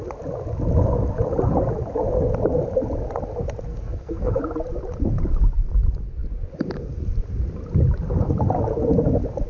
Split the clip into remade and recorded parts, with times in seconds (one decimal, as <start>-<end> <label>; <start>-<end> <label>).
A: 0.0-3.7 recorded; 3.7-4.4 remade; 4.4-9.5 recorded